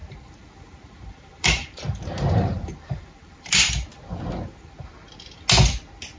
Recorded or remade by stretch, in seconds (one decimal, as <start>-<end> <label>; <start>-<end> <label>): 0.0-3.7 remade; 3.7-6.2 recorded